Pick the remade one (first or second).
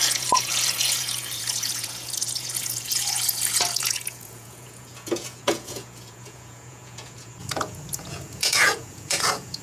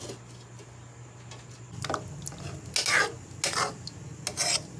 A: first